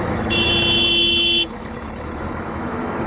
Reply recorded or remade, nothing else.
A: remade